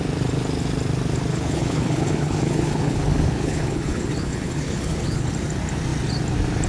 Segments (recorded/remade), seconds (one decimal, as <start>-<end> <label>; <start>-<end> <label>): 0.0-1.3 recorded; 1.3-5.3 remade; 5.3-6.7 recorded